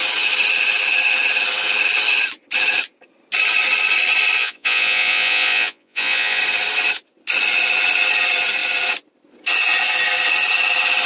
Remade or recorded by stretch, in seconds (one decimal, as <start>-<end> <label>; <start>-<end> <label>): 0.0-4.4 recorded; 4.4-6.4 remade; 6.4-11.1 recorded